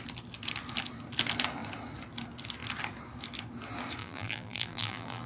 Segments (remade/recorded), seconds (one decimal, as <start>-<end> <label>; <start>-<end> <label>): 0.0-4.0 recorded; 4.0-5.3 remade